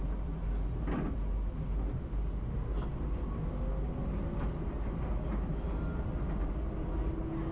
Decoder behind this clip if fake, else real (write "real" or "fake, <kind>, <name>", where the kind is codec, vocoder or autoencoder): real